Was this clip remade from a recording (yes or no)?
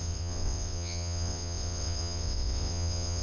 yes